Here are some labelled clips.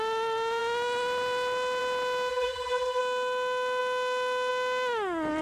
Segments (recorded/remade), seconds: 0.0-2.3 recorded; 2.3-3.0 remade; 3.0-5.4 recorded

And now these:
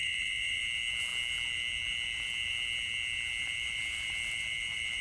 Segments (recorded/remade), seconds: 0.0-0.6 remade; 0.6-5.0 recorded

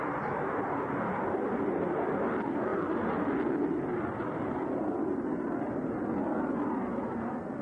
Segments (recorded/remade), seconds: 0.0-7.6 recorded

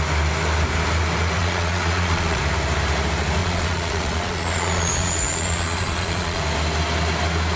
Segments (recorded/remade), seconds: 0.0-1.4 recorded; 1.4-2.4 remade; 2.4-3.4 recorded; 3.4-6.4 remade; 6.4-7.6 recorded

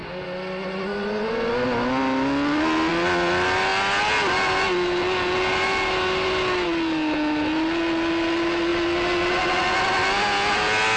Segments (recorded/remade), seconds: 0.0-11.0 recorded

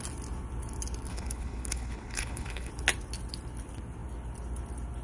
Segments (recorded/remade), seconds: 0.0-1.1 recorded; 1.1-2.7 remade; 2.7-5.0 recorded

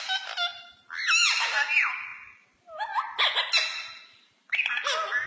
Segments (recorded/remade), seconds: 0.0-5.3 recorded